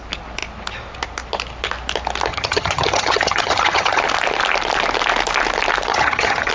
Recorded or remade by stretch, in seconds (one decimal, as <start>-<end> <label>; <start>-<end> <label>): 0.0-2.3 recorded; 2.3-4.0 remade; 4.0-5.9 recorded; 5.9-6.5 remade